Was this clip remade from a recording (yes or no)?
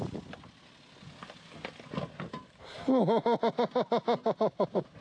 no